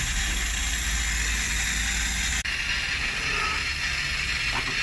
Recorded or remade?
recorded